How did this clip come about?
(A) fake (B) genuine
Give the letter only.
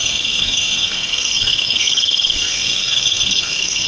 A